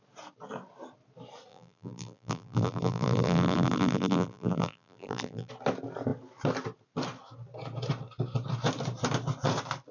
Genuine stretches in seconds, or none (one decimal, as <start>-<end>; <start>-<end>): 0.0-1.5; 5.5-9.9